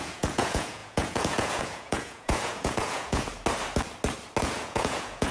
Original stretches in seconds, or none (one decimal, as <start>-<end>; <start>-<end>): 3.3-4.4